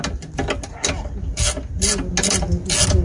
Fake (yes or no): no